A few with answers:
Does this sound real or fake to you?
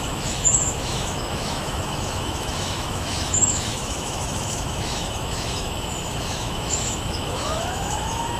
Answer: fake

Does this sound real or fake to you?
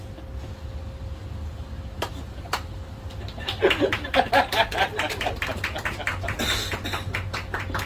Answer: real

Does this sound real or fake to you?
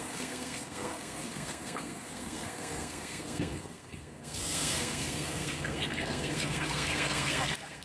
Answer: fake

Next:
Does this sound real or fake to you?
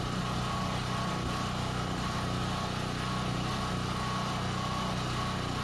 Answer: real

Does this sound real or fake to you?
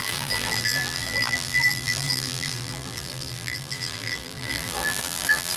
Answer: fake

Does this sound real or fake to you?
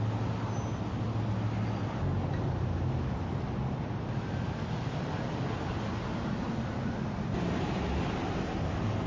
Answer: real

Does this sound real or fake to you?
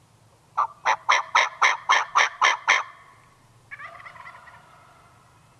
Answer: real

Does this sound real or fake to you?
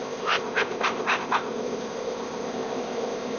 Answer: fake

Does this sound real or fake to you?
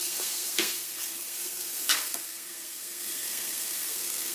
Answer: fake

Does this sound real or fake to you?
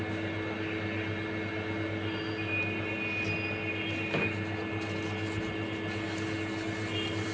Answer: real